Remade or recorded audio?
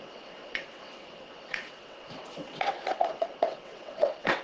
remade